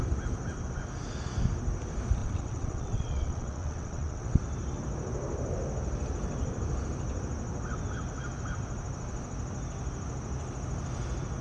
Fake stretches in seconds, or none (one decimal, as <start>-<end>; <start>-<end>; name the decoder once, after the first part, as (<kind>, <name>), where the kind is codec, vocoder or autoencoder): 2.2-4.4 (vocoder, WaveNeXt)